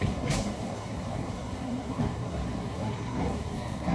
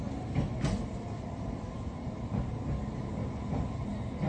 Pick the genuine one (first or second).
second